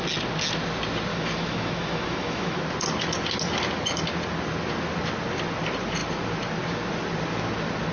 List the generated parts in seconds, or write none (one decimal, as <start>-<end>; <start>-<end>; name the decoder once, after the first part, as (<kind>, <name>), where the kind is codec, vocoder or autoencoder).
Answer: 1.1-2.6 (autoencoder, DAC-VAE)